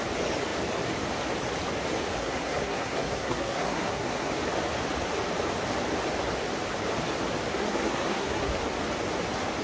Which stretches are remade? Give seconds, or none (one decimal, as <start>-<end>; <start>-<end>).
2.2-4.3; 7.6-8.5